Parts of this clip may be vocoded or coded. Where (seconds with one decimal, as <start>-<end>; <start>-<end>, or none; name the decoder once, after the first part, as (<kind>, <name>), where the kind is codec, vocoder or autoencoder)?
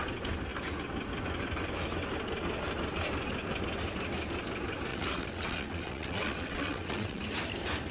4.9-7.2 (vocoder, WaveNeXt)